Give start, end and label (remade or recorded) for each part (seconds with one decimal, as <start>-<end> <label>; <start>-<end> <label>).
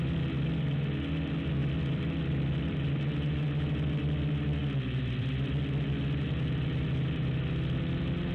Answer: 0.0-1.6 recorded; 1.6-3.0 remade; 3.0-4.6 recorded; 4.6-5.5 remade; 5.5-8.3 recorded